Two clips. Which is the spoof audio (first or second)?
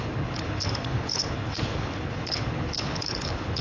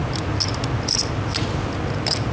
first